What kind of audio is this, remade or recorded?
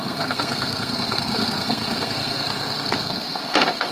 remade